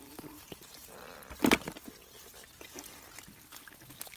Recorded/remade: recorded